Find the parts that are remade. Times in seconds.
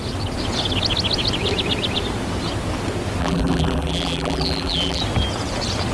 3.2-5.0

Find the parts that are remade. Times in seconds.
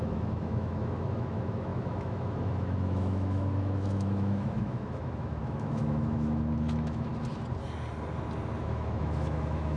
0.0-7.1; 8.6-9.8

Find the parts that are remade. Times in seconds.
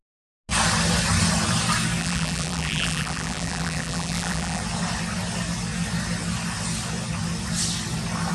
2.0-4.6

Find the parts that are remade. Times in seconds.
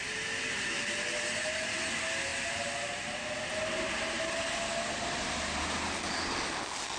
none